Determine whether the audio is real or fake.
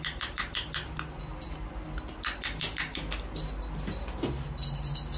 real